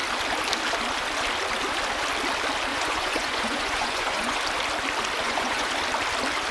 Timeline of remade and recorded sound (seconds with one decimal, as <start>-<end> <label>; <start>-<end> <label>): 0.0-2.7 recorded; 2.7-4.4 remade; 4.4-5.2 recorded; 5.2-5.7 remade; 5.7-6.5 recorded